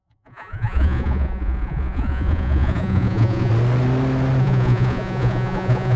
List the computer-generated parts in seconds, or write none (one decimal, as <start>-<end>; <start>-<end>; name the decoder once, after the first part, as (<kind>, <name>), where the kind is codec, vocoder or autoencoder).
0.0-3.5 (vocoder, Vocos); 4.4-6.0